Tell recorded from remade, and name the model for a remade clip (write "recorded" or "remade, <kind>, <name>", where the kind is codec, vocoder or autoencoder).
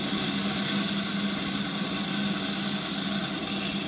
recorded